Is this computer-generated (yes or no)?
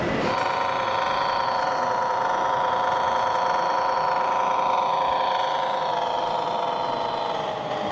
no